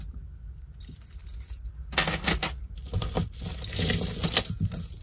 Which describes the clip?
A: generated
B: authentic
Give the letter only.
B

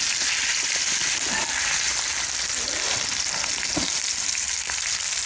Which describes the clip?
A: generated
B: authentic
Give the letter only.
B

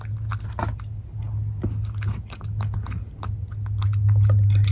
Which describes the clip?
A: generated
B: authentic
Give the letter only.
B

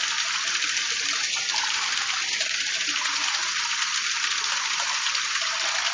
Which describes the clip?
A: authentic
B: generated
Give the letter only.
A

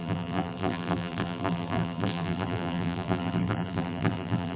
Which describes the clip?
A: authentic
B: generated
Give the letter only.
B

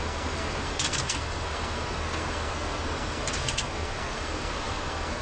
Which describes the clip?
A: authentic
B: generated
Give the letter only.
B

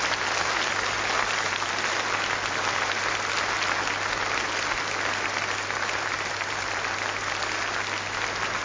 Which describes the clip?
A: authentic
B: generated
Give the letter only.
A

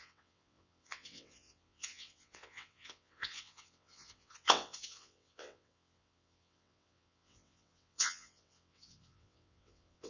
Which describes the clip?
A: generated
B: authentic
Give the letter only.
A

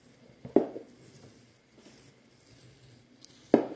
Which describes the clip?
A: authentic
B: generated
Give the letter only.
A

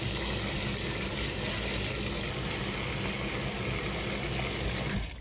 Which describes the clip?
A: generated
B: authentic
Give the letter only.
B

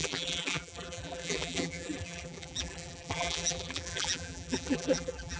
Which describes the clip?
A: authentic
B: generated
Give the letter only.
B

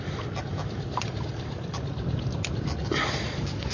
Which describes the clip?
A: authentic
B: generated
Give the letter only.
A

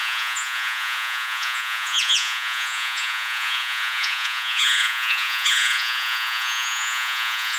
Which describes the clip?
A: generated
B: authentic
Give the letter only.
A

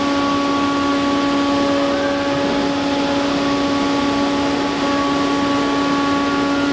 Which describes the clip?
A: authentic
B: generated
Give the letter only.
A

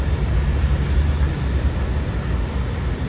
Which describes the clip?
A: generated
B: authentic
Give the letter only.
B